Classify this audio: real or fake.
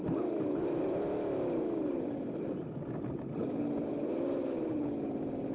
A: real